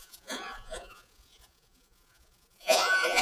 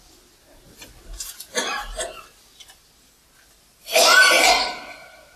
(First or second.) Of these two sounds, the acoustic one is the second